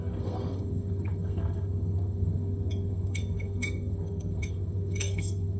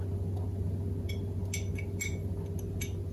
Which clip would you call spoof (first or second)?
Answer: first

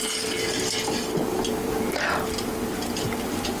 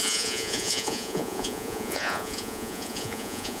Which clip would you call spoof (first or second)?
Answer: second